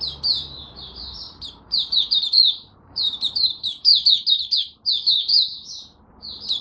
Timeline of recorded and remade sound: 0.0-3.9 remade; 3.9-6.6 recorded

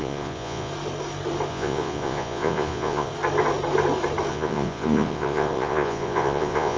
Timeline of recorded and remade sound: 0.0-0.7 remade; 0.7-1.5 recorded; 1.5-3.1 remade; 3.1-4.3 recorded; 4.3-6.8 remade